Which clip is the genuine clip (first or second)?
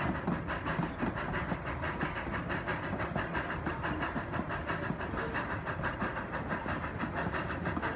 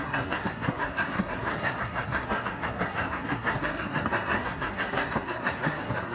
first